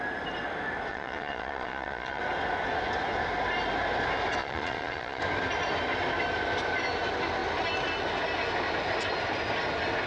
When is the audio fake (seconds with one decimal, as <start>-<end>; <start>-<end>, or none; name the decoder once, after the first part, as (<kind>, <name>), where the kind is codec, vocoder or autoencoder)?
0.9-2.2 (vocoder, Vocos); 4.4-5.2